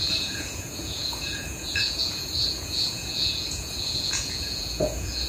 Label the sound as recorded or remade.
remade